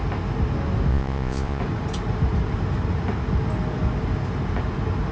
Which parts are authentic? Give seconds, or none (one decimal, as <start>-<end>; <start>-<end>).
0.0-0.9; 1.6-5.1